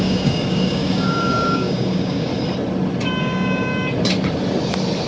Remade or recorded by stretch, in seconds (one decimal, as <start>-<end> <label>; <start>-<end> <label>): 0.0-2.3 remade; 2.3-3.2 recorded; 3.2-3.7 remade; 3.7-5.1 recorded